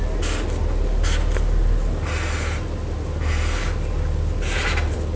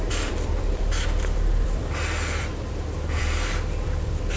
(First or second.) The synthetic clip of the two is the second